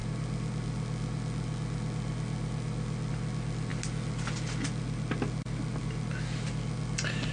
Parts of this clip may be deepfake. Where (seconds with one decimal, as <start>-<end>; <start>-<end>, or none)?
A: none